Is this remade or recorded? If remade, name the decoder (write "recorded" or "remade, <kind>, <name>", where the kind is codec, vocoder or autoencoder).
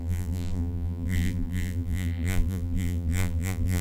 remade, vocoder, BigVGAN v2